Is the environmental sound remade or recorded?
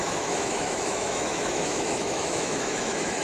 remade